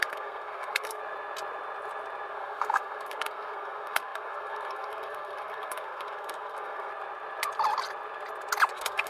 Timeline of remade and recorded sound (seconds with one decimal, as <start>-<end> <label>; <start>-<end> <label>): 0.0-1.0 remade; 1.0-2.3 recorded; 2.3-6.9 remade; 6.9-8.7 recorded; 8.7-9.1 remade